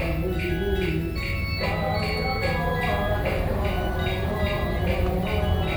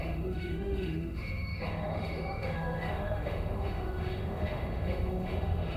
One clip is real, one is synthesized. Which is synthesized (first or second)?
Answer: second